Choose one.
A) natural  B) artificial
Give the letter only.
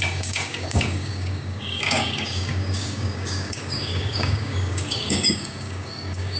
B